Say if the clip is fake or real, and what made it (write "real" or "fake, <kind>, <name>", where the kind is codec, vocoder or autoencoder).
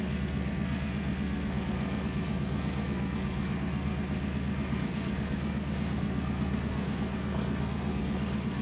fake, codec, SNAC